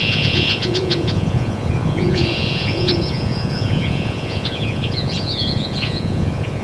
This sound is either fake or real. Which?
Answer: fake